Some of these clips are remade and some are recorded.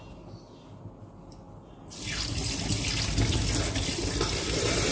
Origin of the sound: recorded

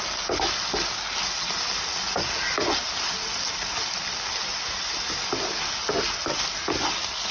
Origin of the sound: recorded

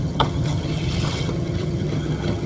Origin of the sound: remade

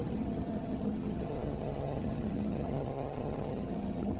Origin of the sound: remade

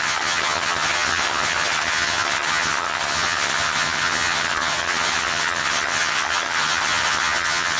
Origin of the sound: remade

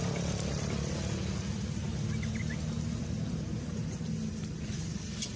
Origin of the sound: recorded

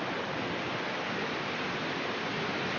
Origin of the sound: recorded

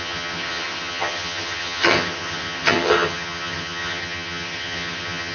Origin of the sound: remade